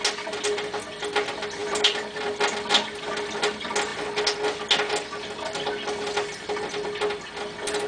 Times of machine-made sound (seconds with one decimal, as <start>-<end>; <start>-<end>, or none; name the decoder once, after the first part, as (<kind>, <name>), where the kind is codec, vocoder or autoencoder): 1.6-2.7 (vocoder, BigVGAN v2)